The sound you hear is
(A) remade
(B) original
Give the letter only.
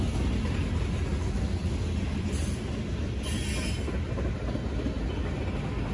B